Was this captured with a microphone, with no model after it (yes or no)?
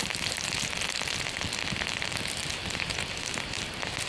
yes